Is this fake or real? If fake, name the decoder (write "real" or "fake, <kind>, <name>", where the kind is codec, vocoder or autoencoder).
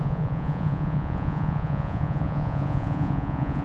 fake, vocoder, Vocos